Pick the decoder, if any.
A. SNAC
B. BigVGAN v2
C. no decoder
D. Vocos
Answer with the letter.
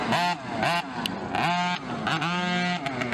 C